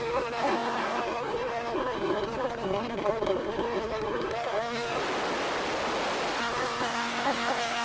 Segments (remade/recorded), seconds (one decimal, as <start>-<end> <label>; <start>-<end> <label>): 0.0-5.0 remade; 5.0-6.4 recorded; 6.4-7.8 remade